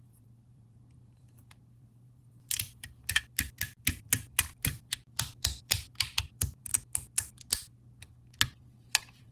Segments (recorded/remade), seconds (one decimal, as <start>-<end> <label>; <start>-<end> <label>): 0.0-6.7 remade; 6.7-8.0 recorded; 8.0-9.3 remade